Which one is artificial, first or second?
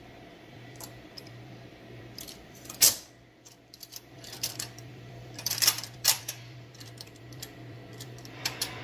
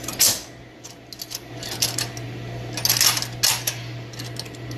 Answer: first